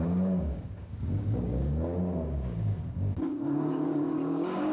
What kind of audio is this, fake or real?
fake